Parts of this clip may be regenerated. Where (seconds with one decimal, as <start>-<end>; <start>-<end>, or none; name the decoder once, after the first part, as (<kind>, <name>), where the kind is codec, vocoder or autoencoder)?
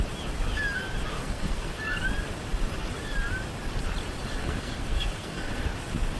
1.1-1.8 (codec, SNAC); 4.4-5.7